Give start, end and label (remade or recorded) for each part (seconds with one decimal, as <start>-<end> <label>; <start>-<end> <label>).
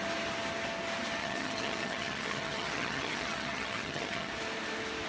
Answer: 0.0-1.2 recorded; 1.2-4.3 remade; 4.3-5.1 recorded